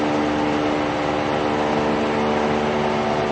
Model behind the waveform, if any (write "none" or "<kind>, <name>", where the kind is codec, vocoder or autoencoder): none